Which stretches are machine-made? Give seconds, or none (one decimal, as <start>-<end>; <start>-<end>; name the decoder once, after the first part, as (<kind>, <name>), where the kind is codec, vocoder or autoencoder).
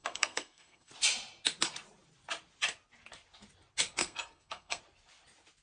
0.0-0.9 (codec, SNAC); 4.0-4.8